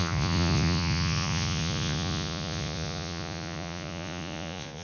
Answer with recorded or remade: remade